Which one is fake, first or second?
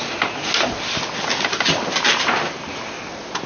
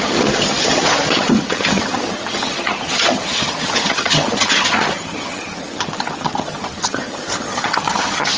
second